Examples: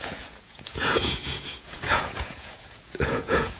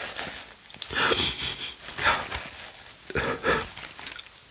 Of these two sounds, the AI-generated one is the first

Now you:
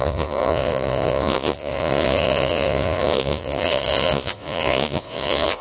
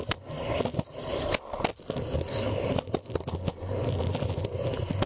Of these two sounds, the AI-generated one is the first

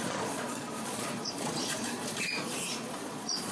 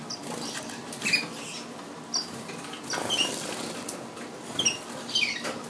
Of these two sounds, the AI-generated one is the first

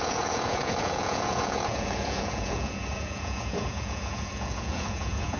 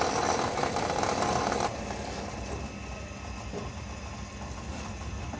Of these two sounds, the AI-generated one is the first